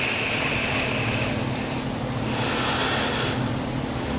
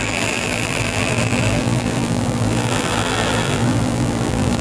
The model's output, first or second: second